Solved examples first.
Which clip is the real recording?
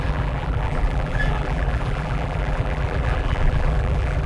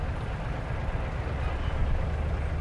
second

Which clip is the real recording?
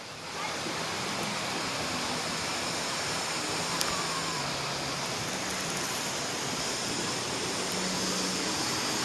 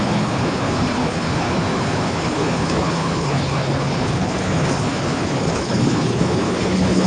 first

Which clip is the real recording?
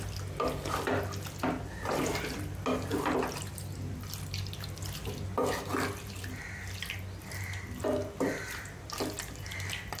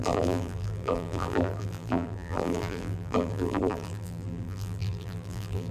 first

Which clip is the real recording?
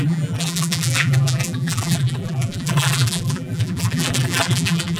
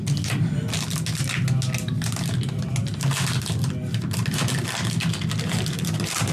second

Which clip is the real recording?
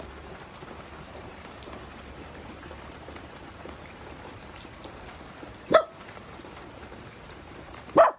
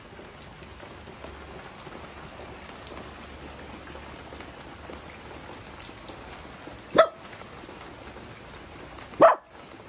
second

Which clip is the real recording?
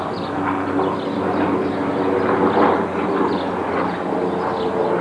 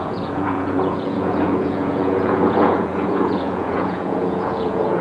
first